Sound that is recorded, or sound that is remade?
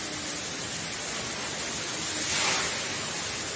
recorded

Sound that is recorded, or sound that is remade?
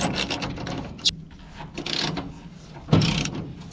recorded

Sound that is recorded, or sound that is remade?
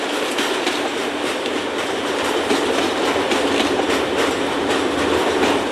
remade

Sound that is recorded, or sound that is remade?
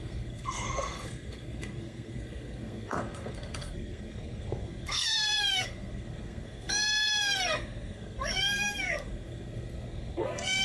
remade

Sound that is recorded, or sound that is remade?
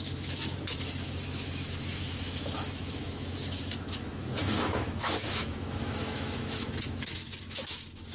remade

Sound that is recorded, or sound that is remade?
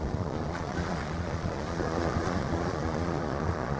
remade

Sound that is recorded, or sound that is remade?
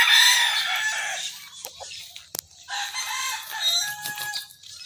recorded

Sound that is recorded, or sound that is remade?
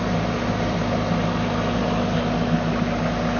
recorded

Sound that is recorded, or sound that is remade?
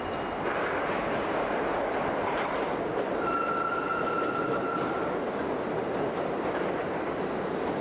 recorded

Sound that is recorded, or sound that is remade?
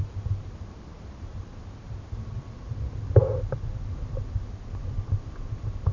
recorded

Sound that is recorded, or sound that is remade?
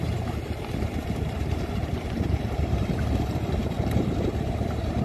remade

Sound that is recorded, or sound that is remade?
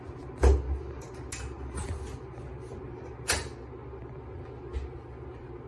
recorded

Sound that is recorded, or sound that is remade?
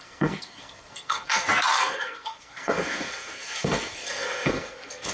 remade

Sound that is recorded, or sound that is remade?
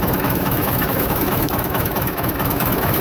remade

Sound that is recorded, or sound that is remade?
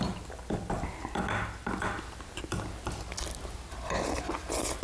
recorded